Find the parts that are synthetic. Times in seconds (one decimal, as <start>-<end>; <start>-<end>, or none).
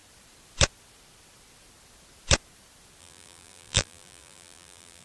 3.0-5.0